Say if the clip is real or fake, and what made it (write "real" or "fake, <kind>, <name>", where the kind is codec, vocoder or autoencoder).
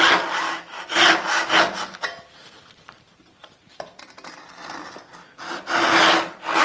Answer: real